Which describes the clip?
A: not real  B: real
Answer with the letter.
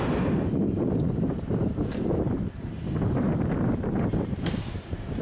A